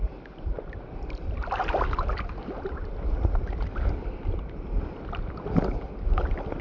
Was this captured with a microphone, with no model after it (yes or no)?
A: yes